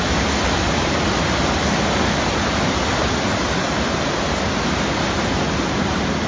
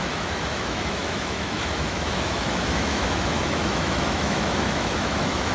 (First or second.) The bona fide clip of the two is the first